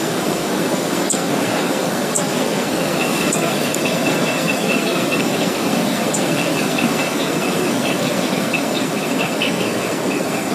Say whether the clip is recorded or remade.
remade